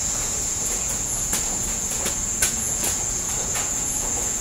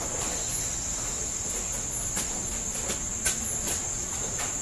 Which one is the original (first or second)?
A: second